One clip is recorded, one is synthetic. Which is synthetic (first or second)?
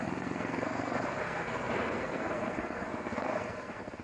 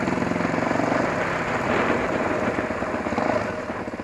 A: first